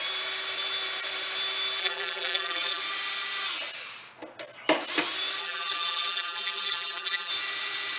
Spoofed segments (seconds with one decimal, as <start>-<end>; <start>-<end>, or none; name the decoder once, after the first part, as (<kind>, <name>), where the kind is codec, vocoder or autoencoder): 1.8-2.8 (vocoder, BigVGAN v2); 5.4-7.3

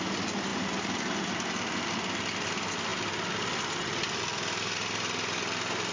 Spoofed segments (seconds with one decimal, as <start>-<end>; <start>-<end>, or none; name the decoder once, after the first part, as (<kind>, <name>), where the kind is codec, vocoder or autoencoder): none